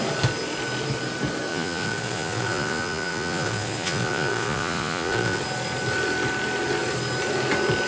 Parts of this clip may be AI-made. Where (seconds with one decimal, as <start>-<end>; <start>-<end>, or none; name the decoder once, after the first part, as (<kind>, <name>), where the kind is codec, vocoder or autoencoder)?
1.5-5.4 (vocoder, Vocos)